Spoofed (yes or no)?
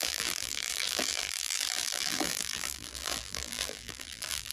yes